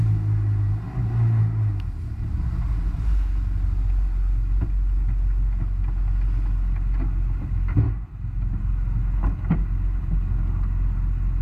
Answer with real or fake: real